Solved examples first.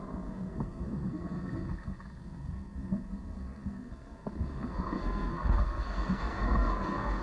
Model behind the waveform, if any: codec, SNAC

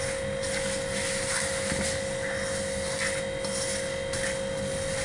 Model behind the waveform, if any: none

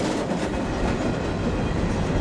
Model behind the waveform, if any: none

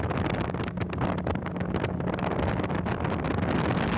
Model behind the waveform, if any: none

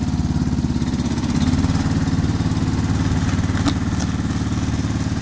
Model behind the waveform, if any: none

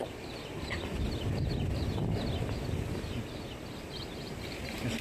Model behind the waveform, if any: none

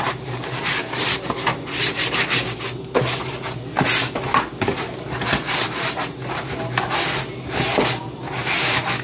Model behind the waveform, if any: none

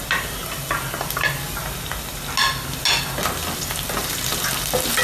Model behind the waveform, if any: none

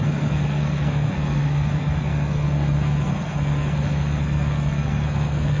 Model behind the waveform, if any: codec, SNAC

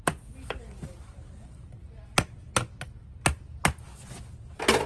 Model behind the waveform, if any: none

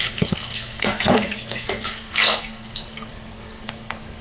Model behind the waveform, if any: codec, SNAC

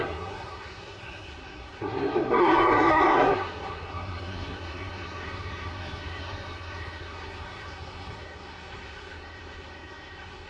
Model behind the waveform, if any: codec, SNAC